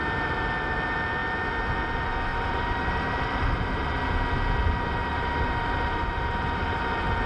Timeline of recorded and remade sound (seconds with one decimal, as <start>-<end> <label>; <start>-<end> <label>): 0.0-2.3 recorded; 2.3-4.0 remade; 4.0-5.1 recorded; 5.1-6.8 remade; 6.8-7.3 recorded